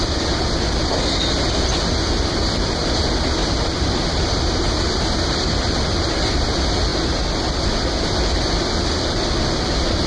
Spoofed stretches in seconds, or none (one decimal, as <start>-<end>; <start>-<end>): 3.4-4.4